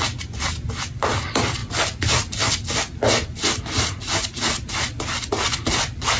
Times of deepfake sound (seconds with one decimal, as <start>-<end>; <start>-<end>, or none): none